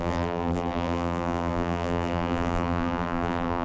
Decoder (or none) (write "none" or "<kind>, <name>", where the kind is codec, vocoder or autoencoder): vocoder, BigVGAN v2